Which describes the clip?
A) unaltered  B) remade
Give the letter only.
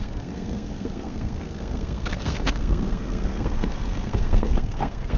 B